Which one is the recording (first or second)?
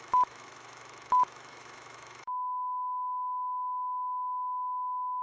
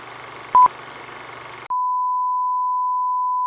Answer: second